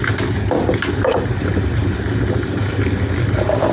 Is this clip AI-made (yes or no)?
no